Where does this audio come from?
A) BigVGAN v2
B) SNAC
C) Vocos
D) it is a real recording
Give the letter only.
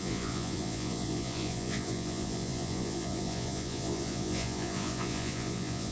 C